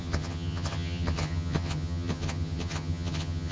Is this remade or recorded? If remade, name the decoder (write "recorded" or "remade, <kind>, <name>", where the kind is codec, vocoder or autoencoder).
remade, vocoder, HiFi-GAN